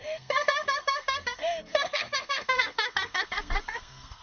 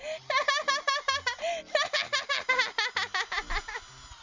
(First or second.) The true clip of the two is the second